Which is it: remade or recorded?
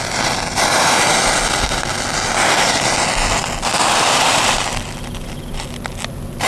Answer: recorded